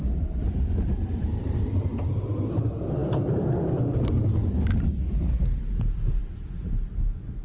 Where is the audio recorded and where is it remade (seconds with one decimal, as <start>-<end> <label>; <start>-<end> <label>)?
0.0-7.4 recorded